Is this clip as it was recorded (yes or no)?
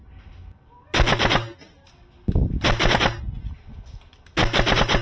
yes